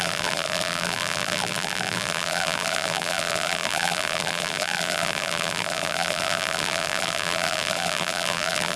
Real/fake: fake